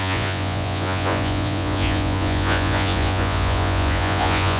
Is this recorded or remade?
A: remade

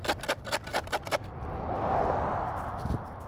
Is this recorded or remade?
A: recorded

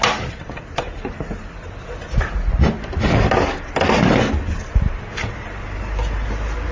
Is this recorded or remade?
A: recorded